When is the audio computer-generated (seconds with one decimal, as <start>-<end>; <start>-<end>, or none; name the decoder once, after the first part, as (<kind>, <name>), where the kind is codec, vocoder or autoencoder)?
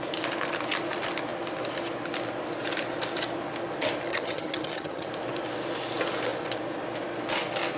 4.1-5.1 (vocoder, HiFi-GAN)